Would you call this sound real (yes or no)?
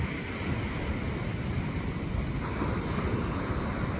yes